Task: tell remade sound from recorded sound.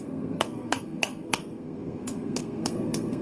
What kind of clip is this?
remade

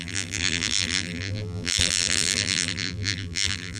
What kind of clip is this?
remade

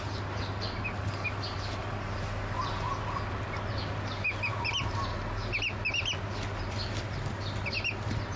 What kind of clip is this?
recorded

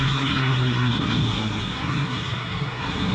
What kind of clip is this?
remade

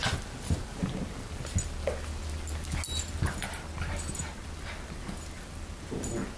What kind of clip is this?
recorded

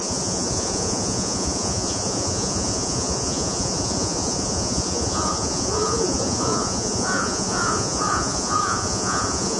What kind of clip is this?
remade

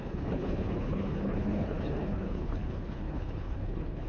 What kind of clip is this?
remade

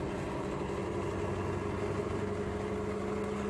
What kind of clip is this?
recorded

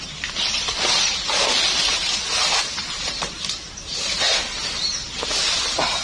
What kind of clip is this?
recorded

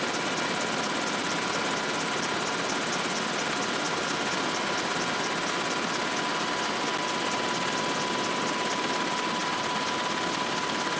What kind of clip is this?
recorded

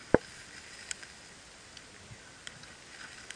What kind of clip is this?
recorded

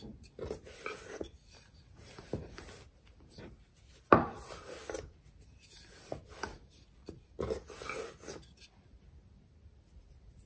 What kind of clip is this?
recorded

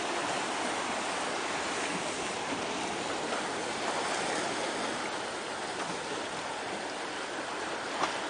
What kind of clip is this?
recorded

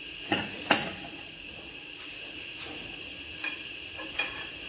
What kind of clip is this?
remade